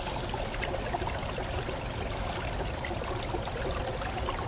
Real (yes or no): yes